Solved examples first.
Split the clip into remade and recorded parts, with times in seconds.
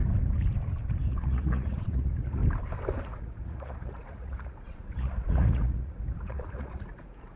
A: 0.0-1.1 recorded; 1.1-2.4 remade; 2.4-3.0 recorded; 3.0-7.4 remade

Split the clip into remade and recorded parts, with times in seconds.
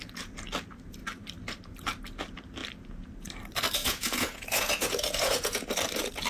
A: 0.0-3.8 recorded; 3.8-5.7 remade; 5.7-6.3 recorded